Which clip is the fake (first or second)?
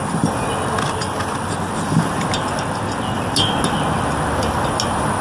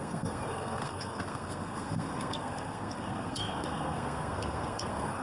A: second